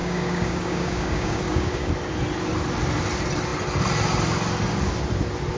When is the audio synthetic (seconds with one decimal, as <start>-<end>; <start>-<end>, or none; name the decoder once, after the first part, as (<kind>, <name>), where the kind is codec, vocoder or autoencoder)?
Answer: 0.0-1.9 (codec, DAC)